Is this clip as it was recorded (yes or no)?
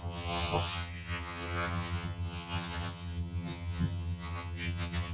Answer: no